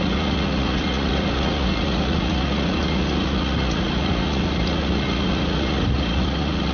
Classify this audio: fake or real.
fake